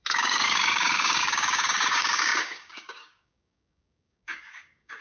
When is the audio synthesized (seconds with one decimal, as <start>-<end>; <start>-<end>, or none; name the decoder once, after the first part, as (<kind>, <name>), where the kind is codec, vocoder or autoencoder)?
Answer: 0.0-5.0 (codec, DAC)